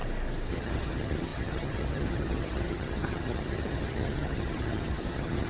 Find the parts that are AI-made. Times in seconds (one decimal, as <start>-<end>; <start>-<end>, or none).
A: 0.5-5.5